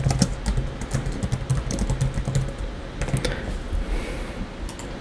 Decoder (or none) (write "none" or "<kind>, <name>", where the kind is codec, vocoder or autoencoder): none